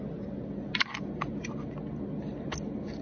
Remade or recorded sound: recorded